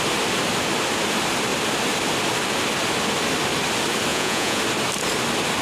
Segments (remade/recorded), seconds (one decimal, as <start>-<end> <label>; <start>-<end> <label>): 0.0-4.1 recorded; 4.1-4.6 remade; 4.6-5.6 recorded